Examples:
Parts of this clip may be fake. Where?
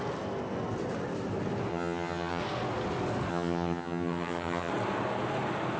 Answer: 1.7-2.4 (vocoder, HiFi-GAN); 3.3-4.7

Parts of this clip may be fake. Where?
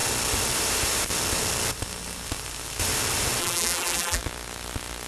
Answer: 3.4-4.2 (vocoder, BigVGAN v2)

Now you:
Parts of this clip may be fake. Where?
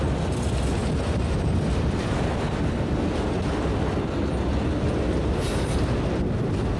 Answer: none